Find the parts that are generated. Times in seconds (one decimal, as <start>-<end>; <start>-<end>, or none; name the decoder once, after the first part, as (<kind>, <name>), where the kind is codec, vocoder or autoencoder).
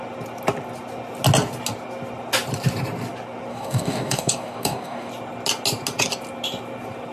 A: 3.5-5.1 (codec, DAC)